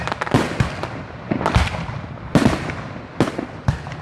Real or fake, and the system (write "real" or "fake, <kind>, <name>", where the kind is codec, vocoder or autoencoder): real